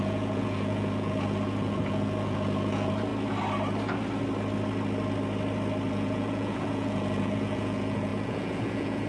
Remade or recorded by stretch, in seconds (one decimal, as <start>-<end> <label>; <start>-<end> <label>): 0.0-3.1 remade; 3.1-5.9 recorded; 5.9-9.1 remade